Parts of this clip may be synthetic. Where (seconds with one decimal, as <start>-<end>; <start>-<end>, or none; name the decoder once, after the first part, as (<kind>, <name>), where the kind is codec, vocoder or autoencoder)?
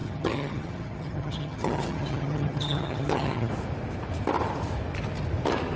0.0-3.5 (vocoder, HiFi-GAN)